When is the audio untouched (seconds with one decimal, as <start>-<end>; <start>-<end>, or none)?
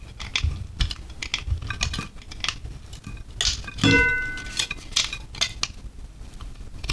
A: 0.0-6.9